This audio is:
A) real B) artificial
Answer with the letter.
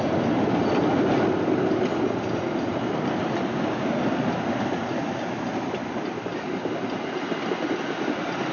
A